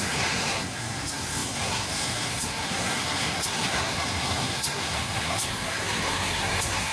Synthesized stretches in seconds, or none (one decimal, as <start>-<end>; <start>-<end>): 0.0-6.9